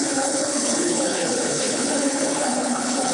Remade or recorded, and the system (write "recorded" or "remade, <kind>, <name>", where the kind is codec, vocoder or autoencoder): remade, codec, HILCodec